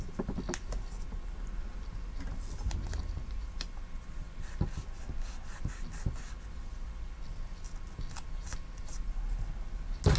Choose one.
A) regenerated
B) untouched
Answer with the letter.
B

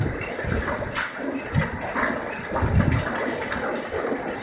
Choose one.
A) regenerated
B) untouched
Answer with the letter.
B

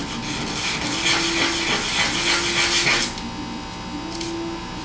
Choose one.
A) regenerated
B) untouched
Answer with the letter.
B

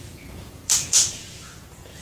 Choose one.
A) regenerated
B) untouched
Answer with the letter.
A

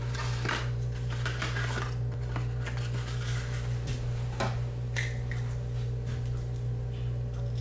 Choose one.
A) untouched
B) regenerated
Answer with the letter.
A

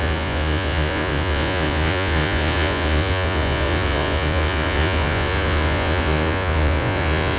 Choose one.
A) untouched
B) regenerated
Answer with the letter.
B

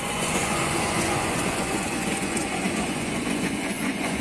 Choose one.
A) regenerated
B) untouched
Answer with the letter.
A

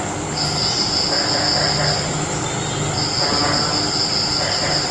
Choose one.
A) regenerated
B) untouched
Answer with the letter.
B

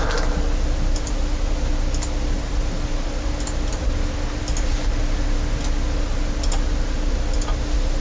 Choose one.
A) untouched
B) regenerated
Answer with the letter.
A